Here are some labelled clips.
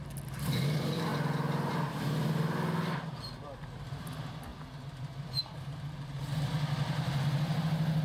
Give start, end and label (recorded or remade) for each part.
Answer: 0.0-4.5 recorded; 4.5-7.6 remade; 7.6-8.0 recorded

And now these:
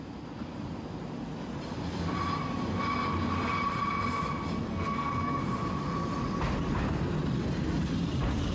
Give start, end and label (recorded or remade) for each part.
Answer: 0.0-4.7 recorded; 4.7-5.4 remade; 5.4-8.5 recorded

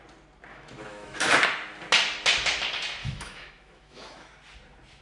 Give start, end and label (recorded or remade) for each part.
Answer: 0.0-0.5 recorded; 0.5-1.3 remade; 1.3-3.0 recorded; 3.0-4.3 remade; 4.3-5.0 recorded

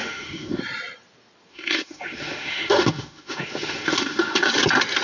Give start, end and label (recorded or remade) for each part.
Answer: 0.0-0.6 remade; 0.6-1.5 recorded; 1.5-4.5 remade; 4.5-5.0 recorded

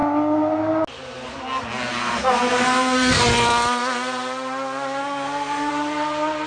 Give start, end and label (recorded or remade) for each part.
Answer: 0.0-1.9 recorded; 1.9-3.2 remade; 3.2-5.0 recorded; 5.0-5.7 remade; 5.7-6.5 recorded

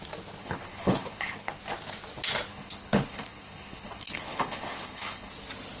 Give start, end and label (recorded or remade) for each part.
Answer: 0.0-0.4 recorded; 0.4-1.6 remade; 1.6-2.5 recorded; 2.5-5.3 remade; 5.3-5.8 recorded